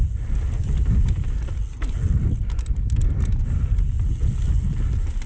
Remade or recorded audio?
recorded